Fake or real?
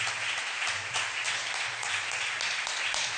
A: real